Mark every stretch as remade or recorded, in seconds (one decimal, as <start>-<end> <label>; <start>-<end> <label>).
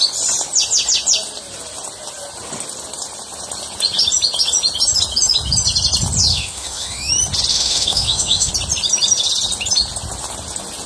0.0-6.3 recorded; 6.3-7.1 remade; 7.1-7.5 recorded; 7.5-8.5 remade; 8.5-10.9 recorded